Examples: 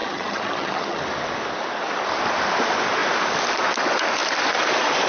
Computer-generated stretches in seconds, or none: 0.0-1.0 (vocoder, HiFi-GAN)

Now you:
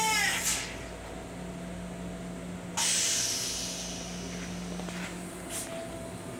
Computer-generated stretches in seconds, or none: none

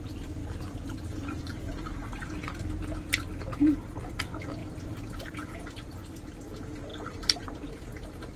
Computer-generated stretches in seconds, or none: none

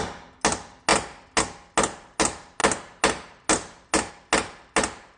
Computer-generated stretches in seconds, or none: none

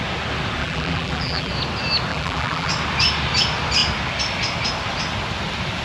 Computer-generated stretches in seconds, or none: 0.6-1.5 (vocoder, BigVGAN v2); 2.1-2.7

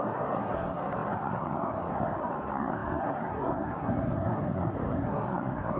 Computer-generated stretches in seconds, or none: 0.0-5.8 (codec, SNAC)

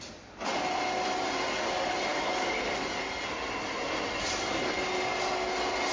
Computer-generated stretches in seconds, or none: none

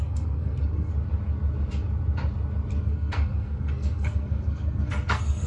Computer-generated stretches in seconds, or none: 0.0-0.9 (codec, SNAC); 2.8-5.5